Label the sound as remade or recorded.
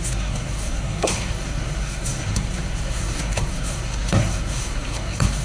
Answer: remade